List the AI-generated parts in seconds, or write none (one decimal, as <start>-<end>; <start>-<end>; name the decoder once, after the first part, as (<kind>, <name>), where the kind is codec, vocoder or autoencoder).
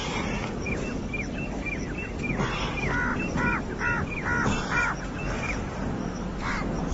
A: 0.0-2.2 (vocoder, BigVGAN v2); 3.1-6.5